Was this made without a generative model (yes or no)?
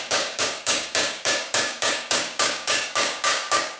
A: no